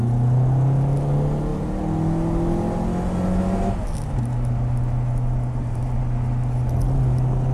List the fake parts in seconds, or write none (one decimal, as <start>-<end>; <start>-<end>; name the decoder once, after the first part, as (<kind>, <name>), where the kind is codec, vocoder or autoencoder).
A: none

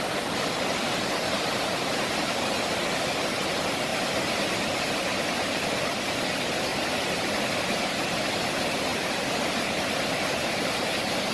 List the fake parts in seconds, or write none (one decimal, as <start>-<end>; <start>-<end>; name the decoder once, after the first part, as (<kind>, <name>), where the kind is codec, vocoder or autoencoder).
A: 3.9-4.4 (vocoder, BigVGAN v2); 6.7-7.5

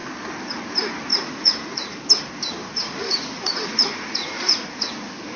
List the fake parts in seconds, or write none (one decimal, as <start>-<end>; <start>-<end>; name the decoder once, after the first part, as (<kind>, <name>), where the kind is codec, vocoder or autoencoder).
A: 1.1-2.0 (vocoder, Vocos); 2.7-4.9

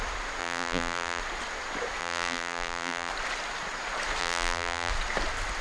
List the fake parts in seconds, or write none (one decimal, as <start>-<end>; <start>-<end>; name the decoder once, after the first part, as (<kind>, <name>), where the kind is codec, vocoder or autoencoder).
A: 0.4-1.2 (vocoder, BigVGAN v2); 2.0-3.1; 4.2-4.9

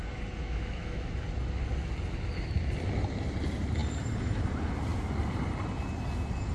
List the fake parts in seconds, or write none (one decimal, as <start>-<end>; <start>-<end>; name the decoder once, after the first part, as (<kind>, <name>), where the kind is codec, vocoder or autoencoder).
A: 0.4-1.1 (autoencoder, DAC-VAE)

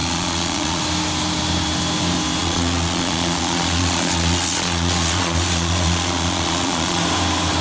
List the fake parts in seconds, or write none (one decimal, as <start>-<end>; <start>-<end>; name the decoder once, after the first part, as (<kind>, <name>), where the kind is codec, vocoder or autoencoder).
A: 0.0-0.8 (vocoder, Vocos); 2.4-7.0

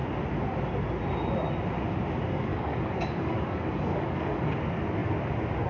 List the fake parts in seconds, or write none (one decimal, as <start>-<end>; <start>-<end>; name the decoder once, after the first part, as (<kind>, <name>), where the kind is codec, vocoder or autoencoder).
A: 2.5-4.5 (codec, DAC)

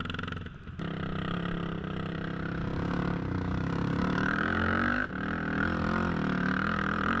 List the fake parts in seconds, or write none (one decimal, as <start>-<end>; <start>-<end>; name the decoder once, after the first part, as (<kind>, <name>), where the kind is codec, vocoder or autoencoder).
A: 2.6-5.1 (codec, DAC)